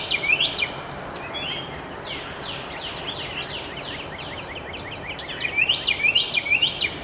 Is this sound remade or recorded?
recorded